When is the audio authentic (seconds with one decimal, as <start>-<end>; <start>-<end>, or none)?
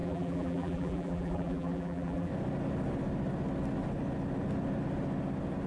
2.3-5.7